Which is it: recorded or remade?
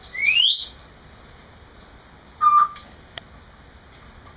recorded